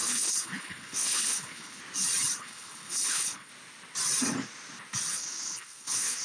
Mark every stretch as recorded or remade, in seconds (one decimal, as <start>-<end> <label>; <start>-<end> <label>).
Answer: 0.0-1.8 remade; 1.8-2.4 recorded; 2.4-3.5 remade; 3.5-5.1 recorded; 5.1-6.2 remade